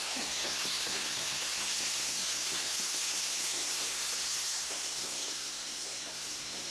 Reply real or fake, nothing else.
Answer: fake